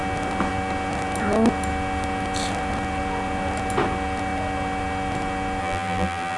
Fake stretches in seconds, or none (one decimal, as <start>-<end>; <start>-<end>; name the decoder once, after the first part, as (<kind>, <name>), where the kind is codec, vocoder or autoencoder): 5.6-6.4 (vocoder, BigVGAN v2)